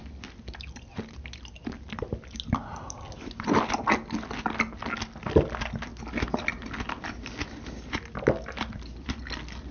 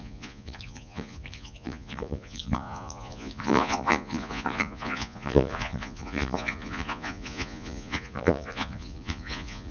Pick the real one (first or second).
first